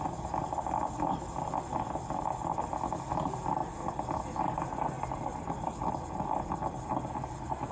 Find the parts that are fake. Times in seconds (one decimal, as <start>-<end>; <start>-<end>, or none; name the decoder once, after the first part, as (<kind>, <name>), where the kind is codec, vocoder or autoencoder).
none